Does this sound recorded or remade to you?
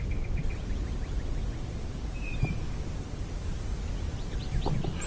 recorded